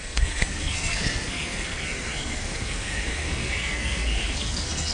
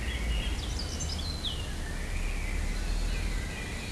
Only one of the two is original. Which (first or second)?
second